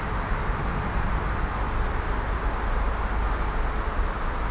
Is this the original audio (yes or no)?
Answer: yes